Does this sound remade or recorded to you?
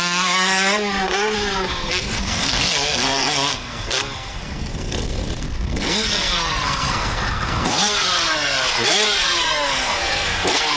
remade